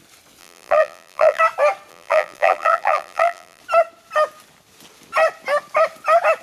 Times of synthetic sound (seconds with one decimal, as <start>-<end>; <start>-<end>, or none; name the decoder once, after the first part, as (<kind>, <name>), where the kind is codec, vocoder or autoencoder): 0.4-1.4 (vocoder, BigVGAN v2); 1.9-3.6